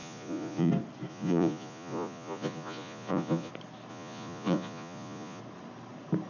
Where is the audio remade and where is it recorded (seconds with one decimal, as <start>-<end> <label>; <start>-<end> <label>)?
0.0-0.7 remade; 0.7-1.1 recorded; 1.1-3.5 remade; 3.5-3.9 recorded; 3.9-5.4 remade; 5.4-6.3 recorded